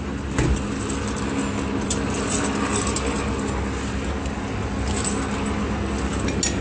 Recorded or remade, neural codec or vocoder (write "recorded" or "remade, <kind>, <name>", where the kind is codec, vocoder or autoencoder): recorded